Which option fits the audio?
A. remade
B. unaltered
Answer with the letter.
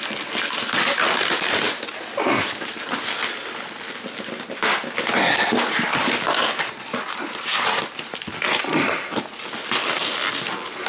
B